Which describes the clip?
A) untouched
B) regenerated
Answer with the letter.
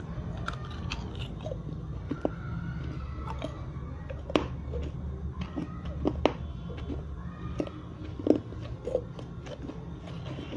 A